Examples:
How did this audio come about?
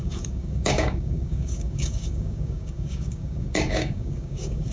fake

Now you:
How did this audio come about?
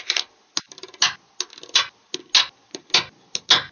real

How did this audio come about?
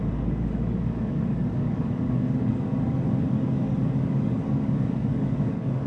fake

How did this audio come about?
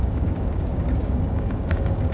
fake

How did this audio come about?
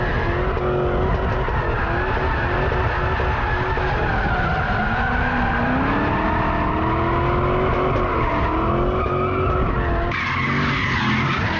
real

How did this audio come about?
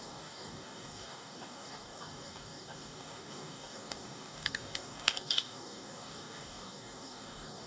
fake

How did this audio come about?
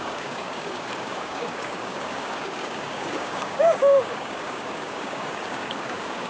fake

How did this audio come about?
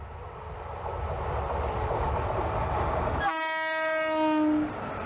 real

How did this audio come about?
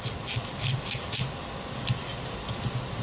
real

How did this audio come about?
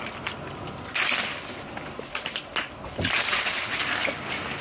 real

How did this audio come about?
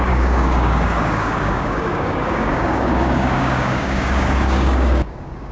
fake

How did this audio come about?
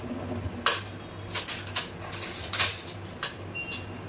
real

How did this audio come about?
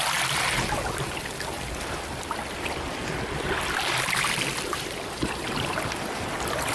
real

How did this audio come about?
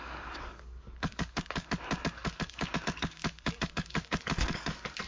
fake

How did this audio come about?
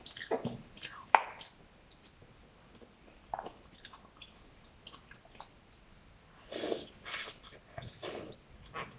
real